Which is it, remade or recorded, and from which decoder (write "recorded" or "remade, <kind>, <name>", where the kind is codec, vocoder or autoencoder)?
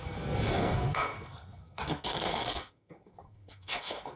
remade, codec, SNAC